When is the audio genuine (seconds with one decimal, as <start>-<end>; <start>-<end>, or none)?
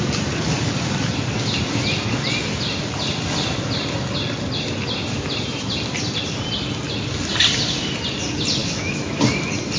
0.0-8.6; 9.2-9.8